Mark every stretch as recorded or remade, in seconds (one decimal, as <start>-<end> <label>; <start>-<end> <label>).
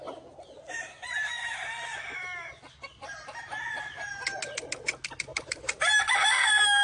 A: 0.0-5.3 recorded; 5.3-6.0 remade; 6.0-6.8 recorded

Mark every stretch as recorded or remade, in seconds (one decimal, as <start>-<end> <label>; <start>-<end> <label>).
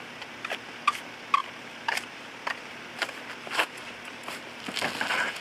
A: 0.0-1.4 recorded; 1.4-4.6 remade; 4.6-5.4 recorded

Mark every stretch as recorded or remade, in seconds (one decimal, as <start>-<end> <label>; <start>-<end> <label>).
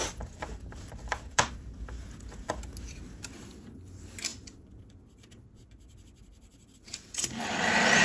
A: 0.0-1.5 remade; 1.5-4.3 recorded; 4.3-7.4 remade; 7.4-8.0 recorded